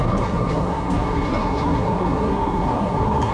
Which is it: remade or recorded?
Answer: remade